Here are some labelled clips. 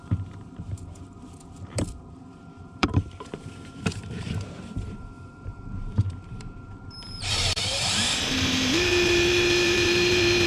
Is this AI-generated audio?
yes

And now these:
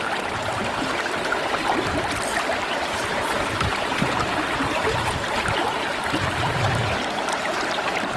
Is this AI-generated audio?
no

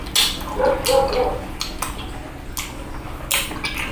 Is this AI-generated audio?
no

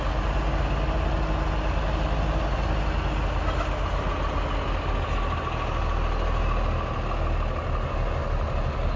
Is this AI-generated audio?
no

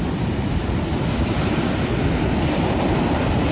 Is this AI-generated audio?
no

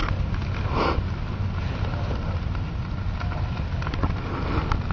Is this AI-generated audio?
no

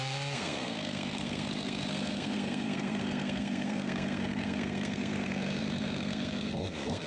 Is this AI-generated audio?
yes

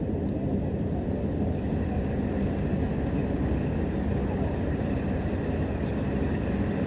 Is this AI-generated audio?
no